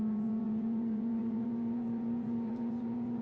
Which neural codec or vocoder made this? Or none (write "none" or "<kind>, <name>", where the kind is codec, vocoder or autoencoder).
vocoder, Vocos